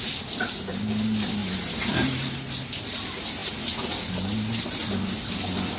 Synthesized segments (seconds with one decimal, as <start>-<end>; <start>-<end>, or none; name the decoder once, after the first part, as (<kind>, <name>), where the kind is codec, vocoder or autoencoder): 1.4-2.6 (vocoder, BigVGAN v2)

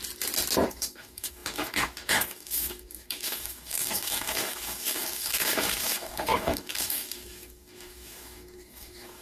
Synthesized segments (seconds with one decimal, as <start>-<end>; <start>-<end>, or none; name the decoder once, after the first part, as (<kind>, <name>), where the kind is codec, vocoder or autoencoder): 0.7-9.2 (codec, DAC)

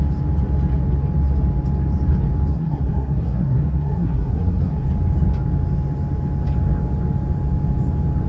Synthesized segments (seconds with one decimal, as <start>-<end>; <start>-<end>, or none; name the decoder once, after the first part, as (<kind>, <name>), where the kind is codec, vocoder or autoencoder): 2.5-4.9 (codec, SNAC)

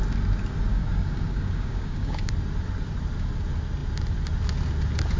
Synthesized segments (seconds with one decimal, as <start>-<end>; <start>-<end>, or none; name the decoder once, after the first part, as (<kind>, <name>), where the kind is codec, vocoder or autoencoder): 0.7-2.3 (codec, DAC)

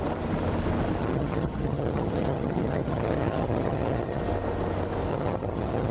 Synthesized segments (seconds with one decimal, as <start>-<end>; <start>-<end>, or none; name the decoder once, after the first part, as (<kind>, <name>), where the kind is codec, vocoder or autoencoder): 1.0-4.2 (vocoder, HiFi-GAN); 5.1-5.9

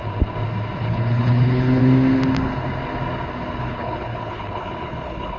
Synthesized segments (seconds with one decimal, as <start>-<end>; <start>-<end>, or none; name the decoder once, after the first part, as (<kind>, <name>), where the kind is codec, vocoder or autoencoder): 0.8-1.8 (codec, HILCodec); 3.6-5.4

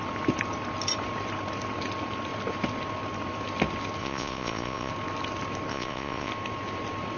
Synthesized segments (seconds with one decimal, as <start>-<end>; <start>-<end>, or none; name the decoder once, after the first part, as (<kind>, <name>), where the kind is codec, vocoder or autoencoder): 4.0-4.9 (vocoder, Vocos); 5.7-6.3

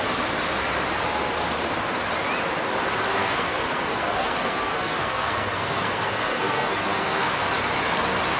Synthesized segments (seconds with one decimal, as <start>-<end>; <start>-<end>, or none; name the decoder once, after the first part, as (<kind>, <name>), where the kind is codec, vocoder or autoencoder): 3.2-7.3 (codec, SNAC)